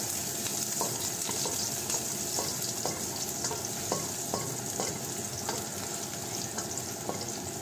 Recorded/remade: recorded